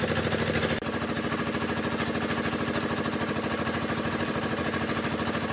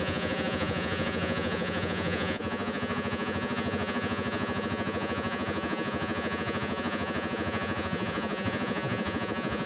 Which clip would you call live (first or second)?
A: first